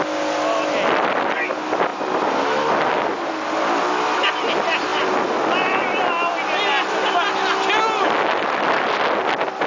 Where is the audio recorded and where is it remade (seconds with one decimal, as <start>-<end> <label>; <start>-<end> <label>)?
0.0-9.7 recorded